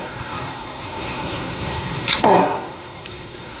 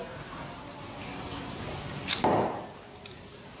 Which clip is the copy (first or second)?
first